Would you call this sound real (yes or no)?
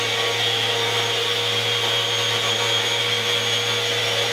yes